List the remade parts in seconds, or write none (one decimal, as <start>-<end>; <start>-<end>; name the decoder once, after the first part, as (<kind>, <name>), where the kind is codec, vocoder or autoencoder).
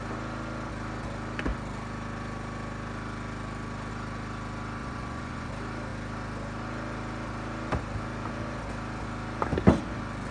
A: 4.8-5.5 (vocoder, Vocos)